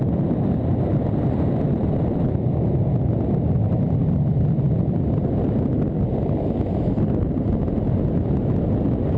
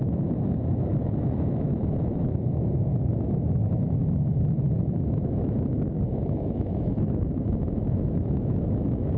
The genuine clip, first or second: first